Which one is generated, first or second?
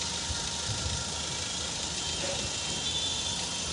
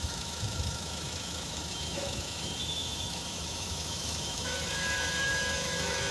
second